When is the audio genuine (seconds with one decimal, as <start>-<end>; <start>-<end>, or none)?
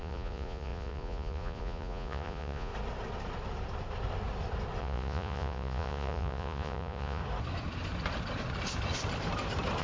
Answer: 2.7-4.8; 7.2-9.8